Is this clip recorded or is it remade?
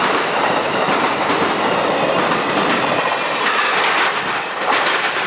recorded